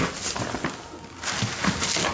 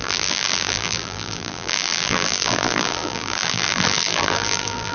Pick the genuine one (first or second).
first